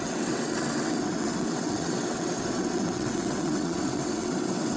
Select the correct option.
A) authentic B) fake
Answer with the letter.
B